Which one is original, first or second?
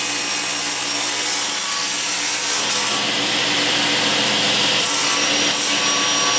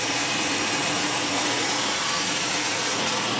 first